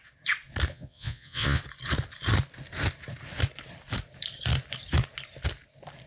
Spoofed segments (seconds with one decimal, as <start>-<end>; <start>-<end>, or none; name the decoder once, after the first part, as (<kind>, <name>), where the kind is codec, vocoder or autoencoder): 0.7-1.6 (vocoder, Vocos)

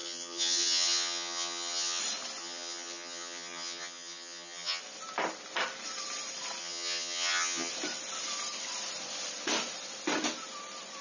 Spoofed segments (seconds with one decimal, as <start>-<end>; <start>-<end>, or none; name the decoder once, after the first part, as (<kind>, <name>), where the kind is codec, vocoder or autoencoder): 0.0-2.0 (vocoder, HiFi-GAN); 2.4-4.8; 6.6-7.7

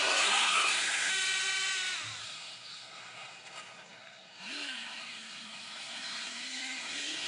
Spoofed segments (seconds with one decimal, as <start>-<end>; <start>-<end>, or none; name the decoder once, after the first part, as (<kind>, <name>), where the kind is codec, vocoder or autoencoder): 0.0-1.1 (codec, SNAC); 2.2-7.3

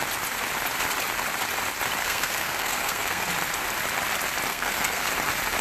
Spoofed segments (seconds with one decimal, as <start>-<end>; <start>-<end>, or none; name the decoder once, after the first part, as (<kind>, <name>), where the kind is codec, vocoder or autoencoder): 2.0-3.2 (codec, SNAC); 4.5-5.1

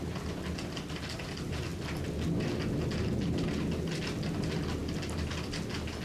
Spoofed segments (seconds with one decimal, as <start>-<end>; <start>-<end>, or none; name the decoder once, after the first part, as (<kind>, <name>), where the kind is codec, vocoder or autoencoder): none

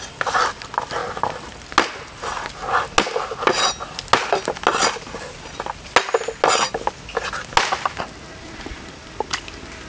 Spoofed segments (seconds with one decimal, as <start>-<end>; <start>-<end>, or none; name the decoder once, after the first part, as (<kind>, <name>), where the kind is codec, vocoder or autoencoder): none

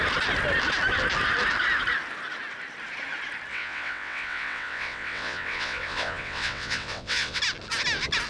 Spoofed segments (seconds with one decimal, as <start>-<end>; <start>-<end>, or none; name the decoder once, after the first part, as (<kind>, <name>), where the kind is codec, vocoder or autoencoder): 3.5-7.4 (vocoder, WaveNeXt)